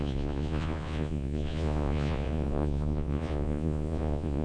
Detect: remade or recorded remade